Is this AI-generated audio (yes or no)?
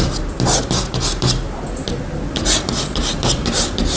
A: no